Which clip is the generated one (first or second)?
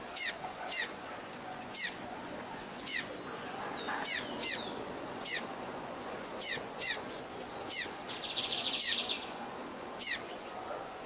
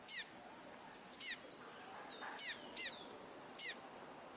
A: first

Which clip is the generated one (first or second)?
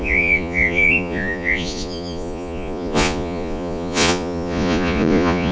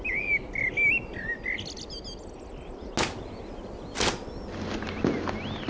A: first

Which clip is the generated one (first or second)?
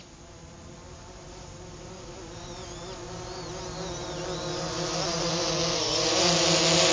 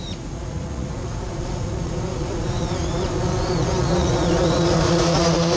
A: second